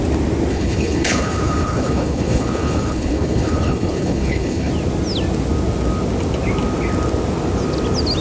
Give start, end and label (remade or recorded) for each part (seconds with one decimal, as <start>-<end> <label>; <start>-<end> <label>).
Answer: 0.0-0.5 recorded; 0.5-4.7 remade; 4.7-8.2 recorded